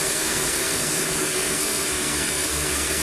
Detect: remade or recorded remade